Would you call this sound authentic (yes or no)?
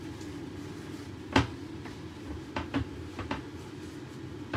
yes